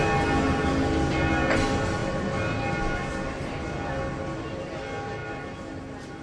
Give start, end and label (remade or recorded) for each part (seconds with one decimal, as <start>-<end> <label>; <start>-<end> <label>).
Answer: 0.0-6.2 recorded